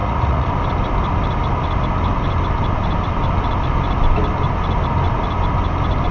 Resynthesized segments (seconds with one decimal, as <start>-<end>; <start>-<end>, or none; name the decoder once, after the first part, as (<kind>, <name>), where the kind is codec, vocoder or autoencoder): 0.0-0.5 (vocoder, Vocos)